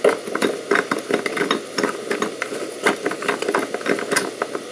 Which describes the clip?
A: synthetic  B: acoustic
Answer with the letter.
B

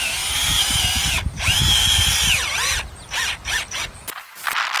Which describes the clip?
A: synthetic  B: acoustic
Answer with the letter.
B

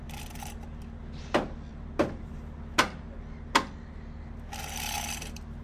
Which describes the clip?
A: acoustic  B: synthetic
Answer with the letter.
A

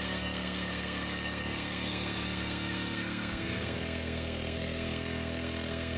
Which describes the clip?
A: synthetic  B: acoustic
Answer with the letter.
A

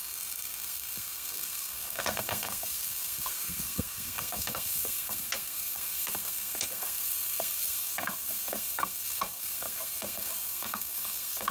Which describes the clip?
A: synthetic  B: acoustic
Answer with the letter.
A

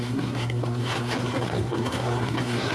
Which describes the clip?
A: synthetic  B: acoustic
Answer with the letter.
A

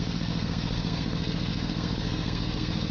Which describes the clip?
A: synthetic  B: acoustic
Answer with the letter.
A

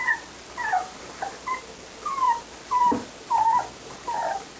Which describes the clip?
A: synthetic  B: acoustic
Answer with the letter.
B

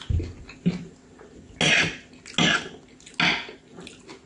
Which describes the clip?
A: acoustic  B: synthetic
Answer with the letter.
A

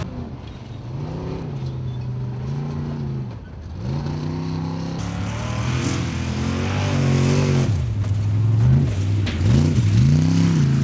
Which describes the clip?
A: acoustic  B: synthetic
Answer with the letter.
A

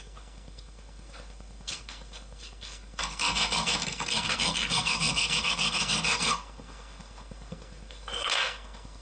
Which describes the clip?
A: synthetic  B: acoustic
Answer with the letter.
A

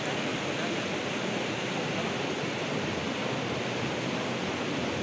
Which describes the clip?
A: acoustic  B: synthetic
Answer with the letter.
A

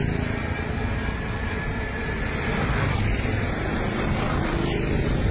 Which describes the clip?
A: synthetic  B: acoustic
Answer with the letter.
B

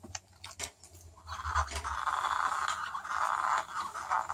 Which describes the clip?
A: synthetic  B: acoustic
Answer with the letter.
B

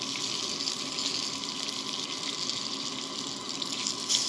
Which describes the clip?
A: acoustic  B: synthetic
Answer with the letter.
A